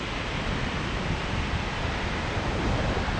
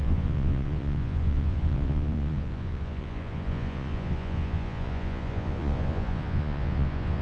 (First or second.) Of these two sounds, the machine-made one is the second